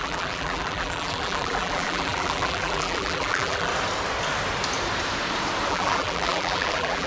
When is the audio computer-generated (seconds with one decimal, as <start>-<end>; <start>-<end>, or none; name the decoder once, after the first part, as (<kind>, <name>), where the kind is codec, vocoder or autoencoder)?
0.0-3.7 (vocoder, BigVGAN v2); 5.7-7.1